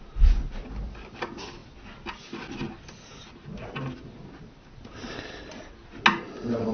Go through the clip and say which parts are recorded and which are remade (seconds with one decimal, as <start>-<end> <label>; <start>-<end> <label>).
0.0-6.7 recorded